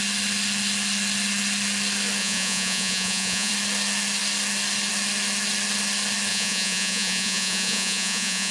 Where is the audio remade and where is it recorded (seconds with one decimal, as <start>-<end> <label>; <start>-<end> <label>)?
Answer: 0.0-2.2 recorded; 2.2-3.5 remade; 3.5-6.3 recorded; 6.3-8.5 remade